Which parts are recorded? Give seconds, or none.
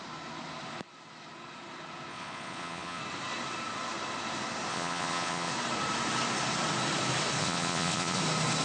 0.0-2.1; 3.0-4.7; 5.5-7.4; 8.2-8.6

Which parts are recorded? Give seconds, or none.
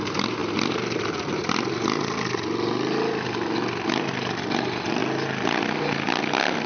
0.0-6.7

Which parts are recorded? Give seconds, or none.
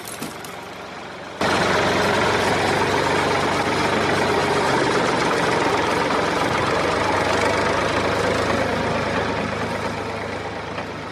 0.0-4.4; 5.7-11.1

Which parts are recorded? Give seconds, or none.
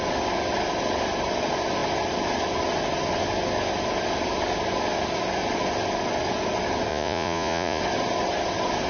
0.0-6.9; 7.8-8.9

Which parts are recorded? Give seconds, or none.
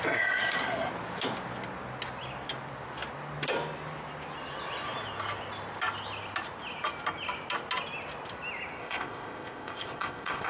0.0-8.8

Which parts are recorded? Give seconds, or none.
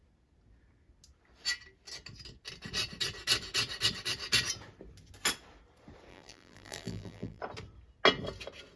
0.0-6.1; 7.4-8.8